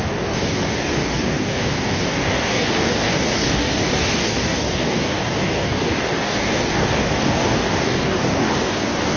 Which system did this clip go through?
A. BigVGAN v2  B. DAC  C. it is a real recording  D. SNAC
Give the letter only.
B